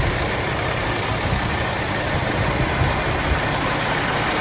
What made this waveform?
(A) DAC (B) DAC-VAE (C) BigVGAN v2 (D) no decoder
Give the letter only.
C